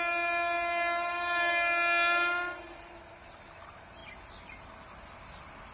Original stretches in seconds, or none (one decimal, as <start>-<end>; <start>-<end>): 0.0-5.7